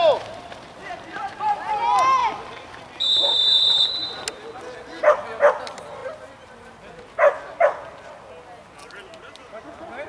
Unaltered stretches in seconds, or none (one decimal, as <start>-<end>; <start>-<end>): 0.0-10.1

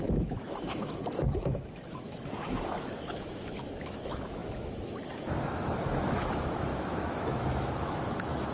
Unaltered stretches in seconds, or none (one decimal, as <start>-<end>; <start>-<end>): none